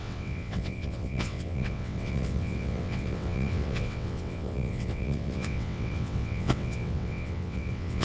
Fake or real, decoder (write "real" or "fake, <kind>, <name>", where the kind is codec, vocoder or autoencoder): fake, vocoder, WaveNeXt